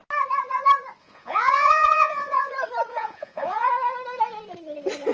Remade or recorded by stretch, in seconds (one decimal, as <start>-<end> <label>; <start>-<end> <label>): 0.0-1.0 recorded; 1.0-2.5 remade; 2.5-2.9 recorded; 2.9-3.7 remade; 3.7-5.1 recorded